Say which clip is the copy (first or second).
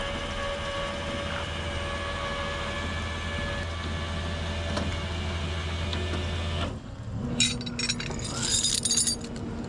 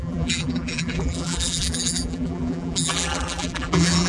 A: second